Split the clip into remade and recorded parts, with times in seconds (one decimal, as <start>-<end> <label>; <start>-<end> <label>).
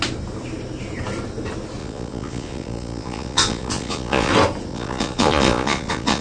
0.0-1.8 recorded; 1.8-4.3 remade; 4.3-4.7 recorded; 4.7-6.2 remade